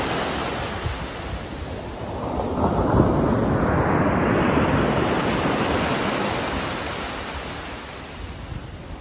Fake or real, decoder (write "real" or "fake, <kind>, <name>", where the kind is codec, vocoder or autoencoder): real